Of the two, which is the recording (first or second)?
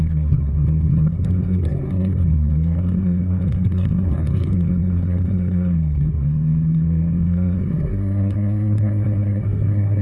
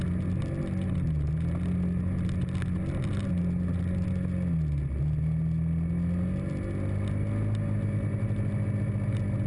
second